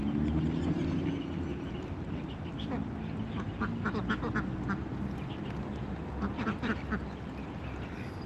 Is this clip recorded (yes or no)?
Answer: yes